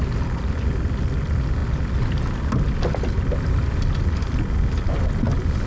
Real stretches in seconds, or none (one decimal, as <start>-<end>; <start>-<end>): 0.0-5.7